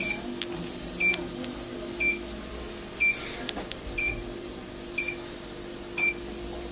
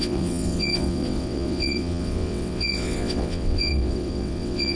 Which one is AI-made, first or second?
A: second